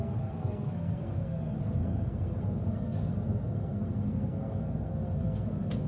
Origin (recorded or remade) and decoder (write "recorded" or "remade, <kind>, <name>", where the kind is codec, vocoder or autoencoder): remade, codec, SNAC